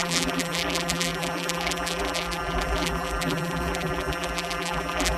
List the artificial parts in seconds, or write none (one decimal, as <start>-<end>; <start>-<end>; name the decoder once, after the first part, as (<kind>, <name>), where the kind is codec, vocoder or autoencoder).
0.0-5.2 (vocoder, BigVGAN v2)